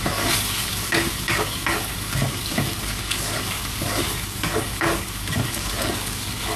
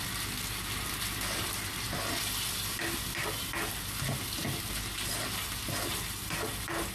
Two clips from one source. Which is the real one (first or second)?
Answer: second